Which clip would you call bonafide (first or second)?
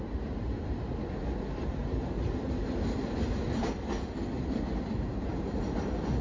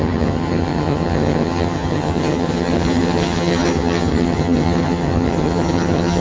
first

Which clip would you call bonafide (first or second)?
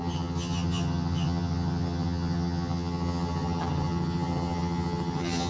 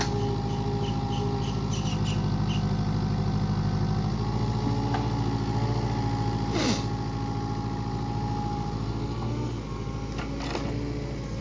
second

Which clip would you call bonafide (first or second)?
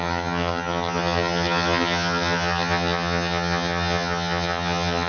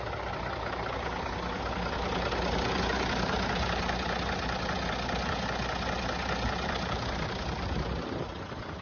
second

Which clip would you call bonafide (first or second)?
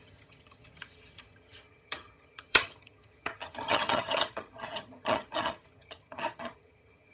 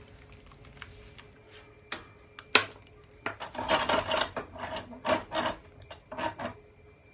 second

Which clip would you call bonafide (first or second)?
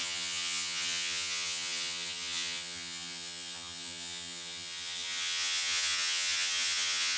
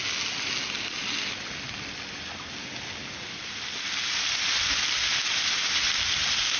second